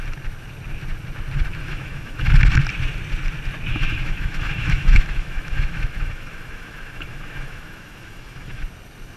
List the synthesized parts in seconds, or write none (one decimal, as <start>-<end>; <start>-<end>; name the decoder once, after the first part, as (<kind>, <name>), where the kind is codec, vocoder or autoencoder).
1.6-2.3 (autoencoder, DAC-VAE); 3.7-8.6